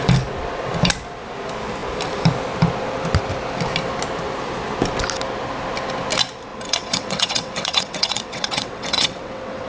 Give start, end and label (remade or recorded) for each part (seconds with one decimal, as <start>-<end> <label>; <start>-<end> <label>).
0.0-6.5 recorded; 6.5-9.7 remade